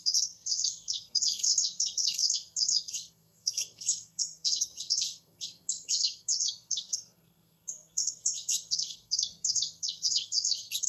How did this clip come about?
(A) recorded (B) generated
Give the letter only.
B